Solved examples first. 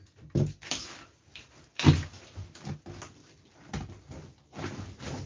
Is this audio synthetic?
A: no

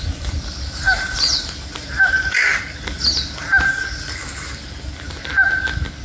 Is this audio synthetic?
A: no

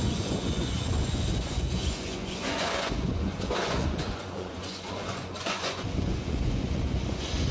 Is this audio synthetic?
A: yes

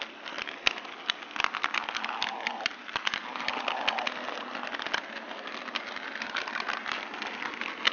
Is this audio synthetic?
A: no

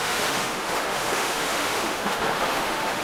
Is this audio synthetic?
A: yes